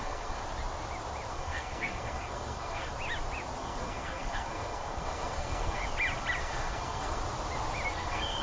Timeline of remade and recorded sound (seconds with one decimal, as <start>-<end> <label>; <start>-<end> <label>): 0.0-0.4 remade; 0.4-1.3 recorded; 1.3-2.9 remade; 2.9-3.6 recorded; 3.6-5.8 remade; 5.8-6.4 recorded; 6.4-7.2 remade; 7.2-7.9 recorded; 7.9-8.4 remade